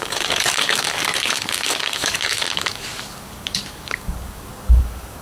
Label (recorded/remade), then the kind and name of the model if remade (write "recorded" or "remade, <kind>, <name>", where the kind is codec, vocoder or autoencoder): remade, codec, DAC